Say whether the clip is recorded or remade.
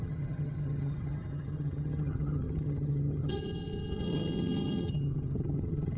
remade